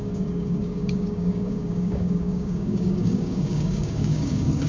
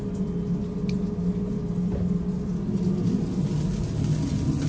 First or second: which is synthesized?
first